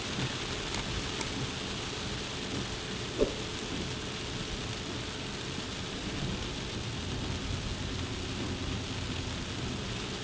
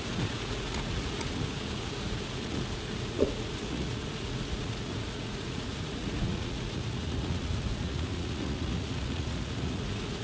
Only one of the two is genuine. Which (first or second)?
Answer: first